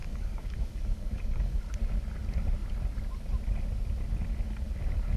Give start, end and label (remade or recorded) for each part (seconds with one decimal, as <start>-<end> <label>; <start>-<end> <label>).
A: 0.0-1.6 remade; 1.6-5.2 recorded